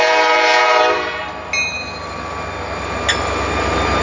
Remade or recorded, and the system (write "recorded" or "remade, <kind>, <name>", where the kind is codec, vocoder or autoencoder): recorded